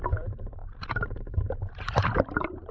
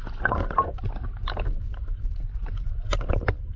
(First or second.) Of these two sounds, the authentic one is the second